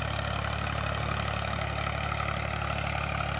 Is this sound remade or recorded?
recorded